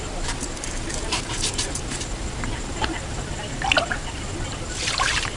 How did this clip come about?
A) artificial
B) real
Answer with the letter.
A